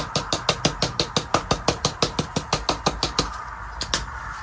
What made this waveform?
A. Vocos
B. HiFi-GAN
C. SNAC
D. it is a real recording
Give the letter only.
D